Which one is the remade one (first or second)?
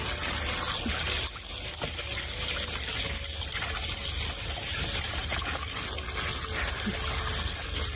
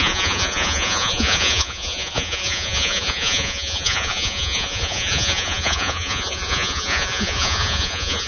second